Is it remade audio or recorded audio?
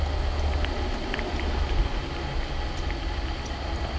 recorded